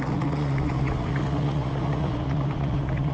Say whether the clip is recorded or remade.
remade